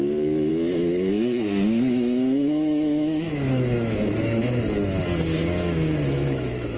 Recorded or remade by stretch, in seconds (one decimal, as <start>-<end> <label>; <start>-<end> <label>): 0.0-0.5 recorded; 0.5-4.6 remade; 4.6-5.4 recorded; 5.4-6.8 remade